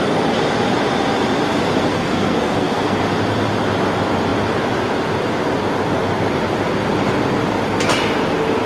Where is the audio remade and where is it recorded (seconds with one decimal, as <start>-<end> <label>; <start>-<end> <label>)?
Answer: 0.0-1.9 recorded; 1.9-3.0 remade; 3.0-8.7 recorded